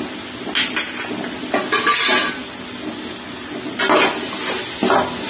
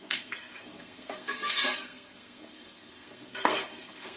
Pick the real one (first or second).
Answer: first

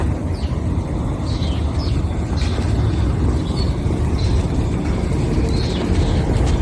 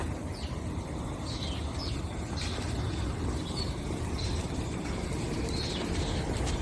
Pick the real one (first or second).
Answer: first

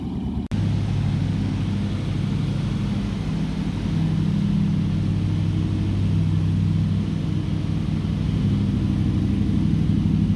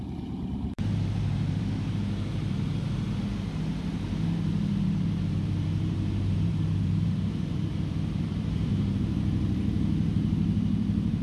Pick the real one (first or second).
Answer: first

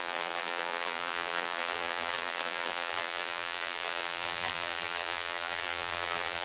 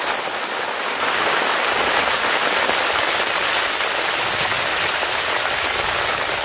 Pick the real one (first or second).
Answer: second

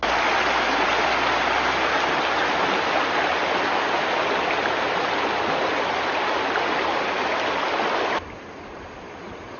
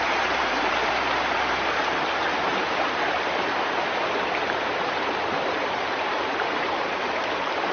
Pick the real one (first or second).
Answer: first